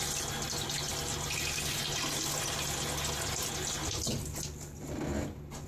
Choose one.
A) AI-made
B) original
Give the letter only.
B